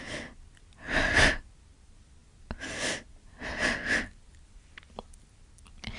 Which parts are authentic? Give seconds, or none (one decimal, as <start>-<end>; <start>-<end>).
0.0-6.0